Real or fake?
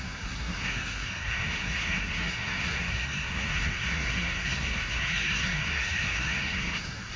fake